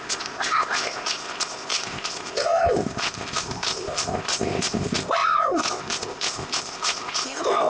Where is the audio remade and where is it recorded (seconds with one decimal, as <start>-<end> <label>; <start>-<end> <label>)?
0.0-7.7 remade